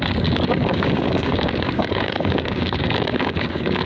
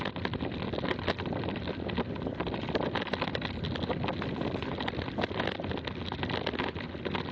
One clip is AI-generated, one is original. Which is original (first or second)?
second